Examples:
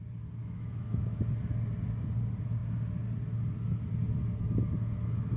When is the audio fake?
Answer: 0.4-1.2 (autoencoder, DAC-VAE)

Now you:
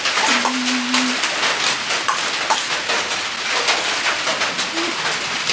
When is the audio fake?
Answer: none

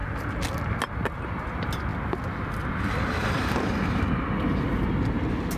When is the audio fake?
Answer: none

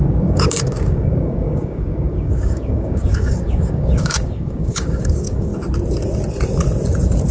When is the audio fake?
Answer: 0.0-5.5 (codec, DAC)

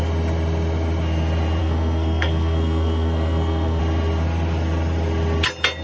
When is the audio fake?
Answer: 1.6-3.8 (codec, SNAC)

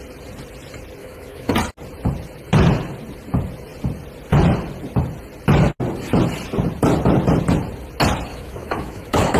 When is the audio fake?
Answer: 1.0-1.5 (autoencoder, DAC-VAE); 8.3-9.4